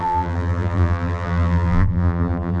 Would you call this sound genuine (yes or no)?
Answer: no